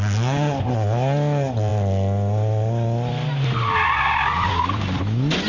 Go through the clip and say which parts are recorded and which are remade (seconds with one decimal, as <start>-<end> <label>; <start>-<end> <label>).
0.0-5.5 recorded